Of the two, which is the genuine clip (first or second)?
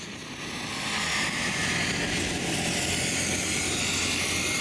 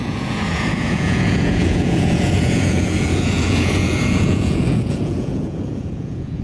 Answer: first